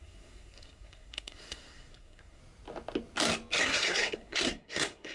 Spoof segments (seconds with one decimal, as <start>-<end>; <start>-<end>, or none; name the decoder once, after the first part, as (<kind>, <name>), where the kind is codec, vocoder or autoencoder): 0.0-2.4 (codec, SNAC); 3.6-5.1